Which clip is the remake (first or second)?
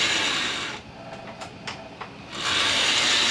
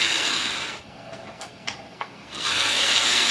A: second